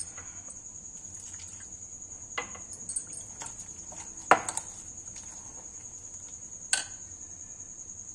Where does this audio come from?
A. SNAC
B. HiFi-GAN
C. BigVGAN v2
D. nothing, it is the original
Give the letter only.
D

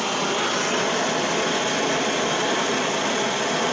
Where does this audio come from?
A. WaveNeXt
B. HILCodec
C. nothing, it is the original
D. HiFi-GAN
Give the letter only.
C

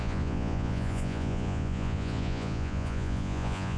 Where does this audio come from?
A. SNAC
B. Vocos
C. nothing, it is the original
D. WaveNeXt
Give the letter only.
B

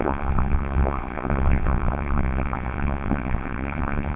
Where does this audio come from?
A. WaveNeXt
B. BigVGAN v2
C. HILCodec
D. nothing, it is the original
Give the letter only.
A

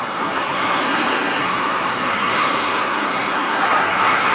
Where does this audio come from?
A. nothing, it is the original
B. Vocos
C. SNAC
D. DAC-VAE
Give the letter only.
C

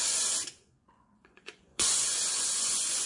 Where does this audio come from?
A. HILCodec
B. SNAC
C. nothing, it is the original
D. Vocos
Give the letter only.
D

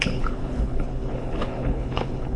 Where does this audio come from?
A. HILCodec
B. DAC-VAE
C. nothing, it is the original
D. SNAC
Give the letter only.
A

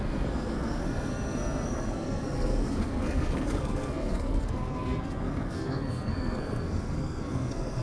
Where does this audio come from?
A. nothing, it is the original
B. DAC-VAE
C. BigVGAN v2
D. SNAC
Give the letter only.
D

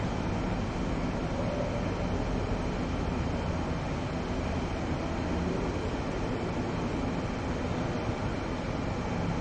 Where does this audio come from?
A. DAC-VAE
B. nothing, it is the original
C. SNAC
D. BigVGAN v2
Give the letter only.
B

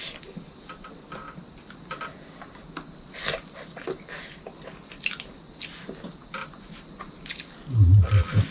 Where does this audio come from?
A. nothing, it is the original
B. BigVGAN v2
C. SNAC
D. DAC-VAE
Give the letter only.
A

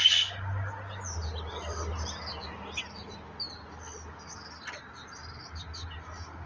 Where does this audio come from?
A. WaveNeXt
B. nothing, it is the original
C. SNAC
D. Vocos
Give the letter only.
B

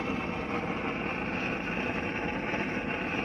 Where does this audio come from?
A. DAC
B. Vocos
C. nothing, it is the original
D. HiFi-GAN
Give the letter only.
C